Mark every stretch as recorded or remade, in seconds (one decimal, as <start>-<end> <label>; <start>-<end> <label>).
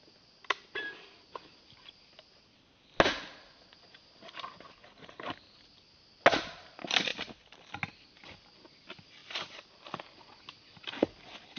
0.0-11.6 recorded